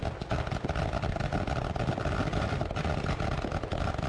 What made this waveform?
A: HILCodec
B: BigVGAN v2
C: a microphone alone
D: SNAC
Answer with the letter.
C